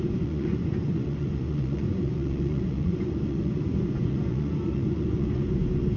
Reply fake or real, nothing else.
fake